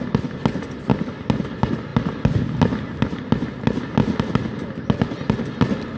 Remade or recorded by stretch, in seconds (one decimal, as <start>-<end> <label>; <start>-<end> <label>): 0.0-6.0 recorded